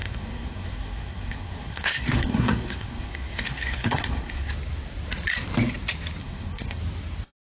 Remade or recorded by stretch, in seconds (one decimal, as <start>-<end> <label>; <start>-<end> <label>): 0.0-4.5 remade; 4.5-6.2 recorded; 6.2-6.8 remade; 6.8-7.5 recorded